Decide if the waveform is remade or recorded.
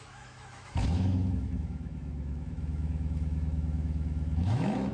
remade